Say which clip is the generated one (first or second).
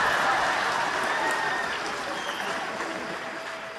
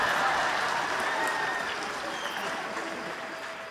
first